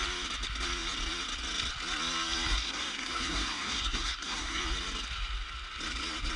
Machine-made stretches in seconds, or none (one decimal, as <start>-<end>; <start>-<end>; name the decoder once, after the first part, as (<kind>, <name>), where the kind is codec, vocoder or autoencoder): 2.5-4.6 (codec, SNAC)